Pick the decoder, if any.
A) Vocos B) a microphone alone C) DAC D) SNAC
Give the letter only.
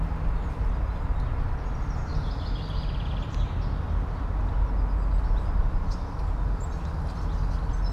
B